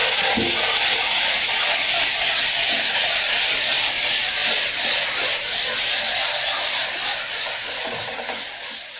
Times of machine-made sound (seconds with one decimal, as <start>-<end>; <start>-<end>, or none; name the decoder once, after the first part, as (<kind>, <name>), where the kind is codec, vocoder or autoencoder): none